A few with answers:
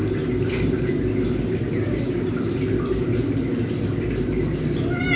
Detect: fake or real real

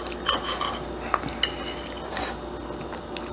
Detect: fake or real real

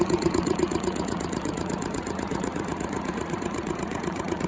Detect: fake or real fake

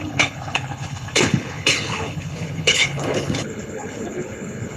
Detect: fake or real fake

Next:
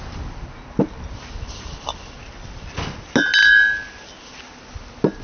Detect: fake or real real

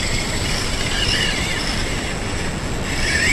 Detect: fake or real real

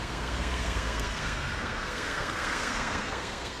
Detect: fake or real fake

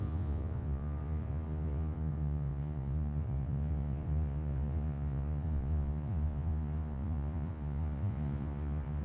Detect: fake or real fake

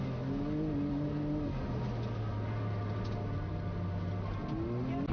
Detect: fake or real real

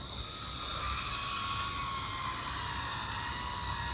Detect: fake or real real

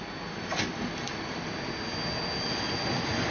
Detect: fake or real real